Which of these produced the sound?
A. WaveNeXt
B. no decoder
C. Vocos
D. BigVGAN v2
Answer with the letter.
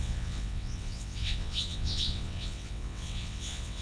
A